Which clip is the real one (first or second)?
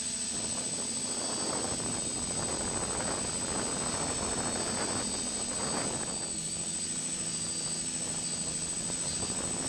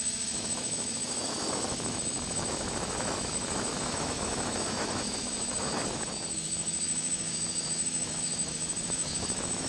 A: first